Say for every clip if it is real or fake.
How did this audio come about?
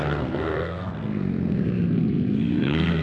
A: fake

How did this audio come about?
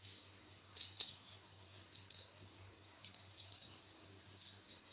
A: fake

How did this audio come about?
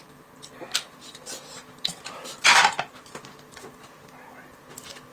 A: real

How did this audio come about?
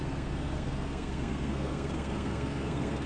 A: fake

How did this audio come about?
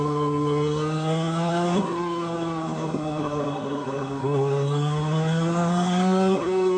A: fake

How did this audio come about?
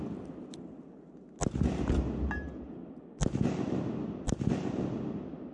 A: real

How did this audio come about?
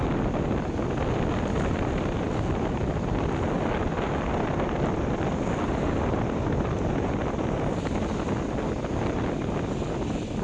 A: real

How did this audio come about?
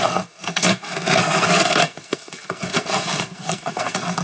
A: fake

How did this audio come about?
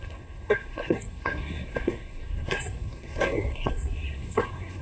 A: fake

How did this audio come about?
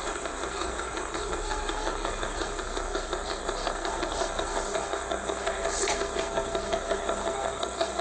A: fake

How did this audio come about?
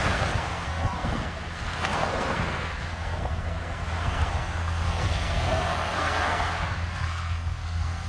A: fake